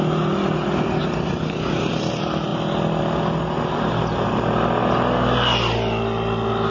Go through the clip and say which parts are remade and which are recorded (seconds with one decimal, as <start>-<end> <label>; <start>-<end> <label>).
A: 0.0-6.7 recorded